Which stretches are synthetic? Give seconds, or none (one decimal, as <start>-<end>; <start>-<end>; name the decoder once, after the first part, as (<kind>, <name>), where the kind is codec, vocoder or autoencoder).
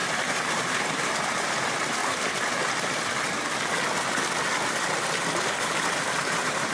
0.0-2.0 (vocoder, BigVGAN v2); 5.6-6.7